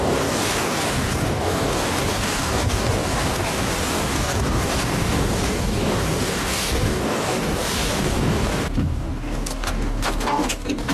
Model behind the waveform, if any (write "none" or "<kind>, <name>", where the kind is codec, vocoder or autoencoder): codec, DAC